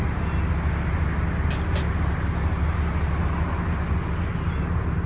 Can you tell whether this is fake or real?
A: real